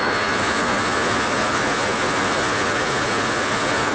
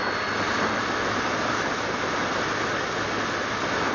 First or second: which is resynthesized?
first